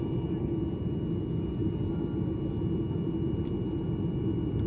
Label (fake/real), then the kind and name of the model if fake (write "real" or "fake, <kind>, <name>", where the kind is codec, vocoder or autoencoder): real